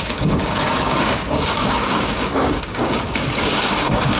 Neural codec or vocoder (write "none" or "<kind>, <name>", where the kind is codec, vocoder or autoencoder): codec, DAC